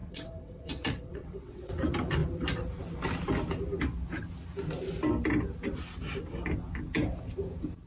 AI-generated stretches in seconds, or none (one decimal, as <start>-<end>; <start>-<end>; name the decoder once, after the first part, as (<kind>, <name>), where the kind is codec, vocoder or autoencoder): 0.0-1.8 (vocoder, WaveNeXt)